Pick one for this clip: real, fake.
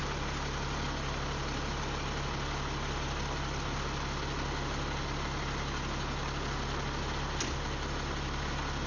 real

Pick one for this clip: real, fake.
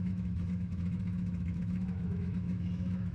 fake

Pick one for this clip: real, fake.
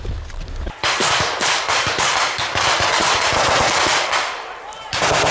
real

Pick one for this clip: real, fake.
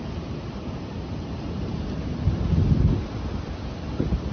real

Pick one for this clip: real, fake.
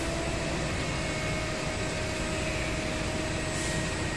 real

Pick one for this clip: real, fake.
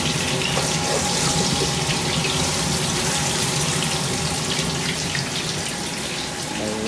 real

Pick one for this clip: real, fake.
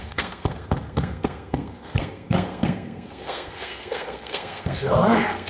fake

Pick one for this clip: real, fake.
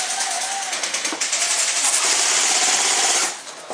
real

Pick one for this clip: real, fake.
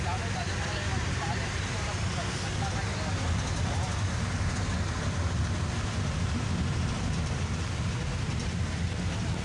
real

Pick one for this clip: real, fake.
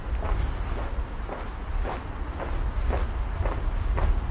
real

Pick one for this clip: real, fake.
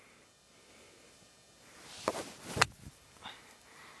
real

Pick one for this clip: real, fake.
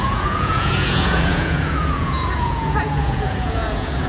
fake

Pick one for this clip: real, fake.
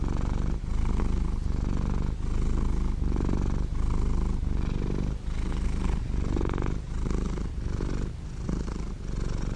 real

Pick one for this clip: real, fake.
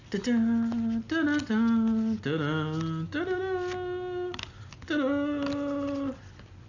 real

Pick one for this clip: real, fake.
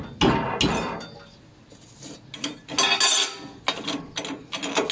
real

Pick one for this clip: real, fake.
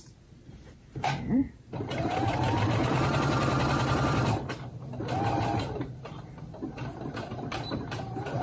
fake